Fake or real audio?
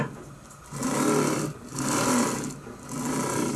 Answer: real